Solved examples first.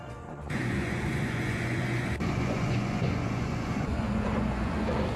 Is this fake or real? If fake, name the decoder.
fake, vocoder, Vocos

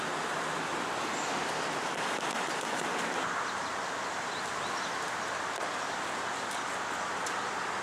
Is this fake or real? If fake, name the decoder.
real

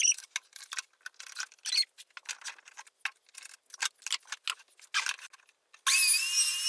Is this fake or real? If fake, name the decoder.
real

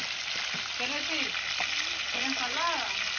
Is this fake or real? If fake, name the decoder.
real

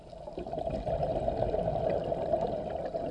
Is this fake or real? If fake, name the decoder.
real